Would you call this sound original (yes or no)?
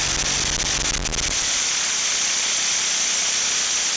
yes